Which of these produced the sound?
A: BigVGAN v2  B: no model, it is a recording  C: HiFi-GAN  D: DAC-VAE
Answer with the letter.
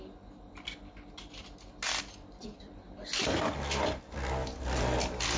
B